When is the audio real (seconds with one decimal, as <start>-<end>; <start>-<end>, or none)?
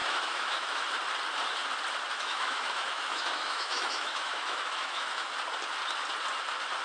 0.8-2.1; 5.3-6.8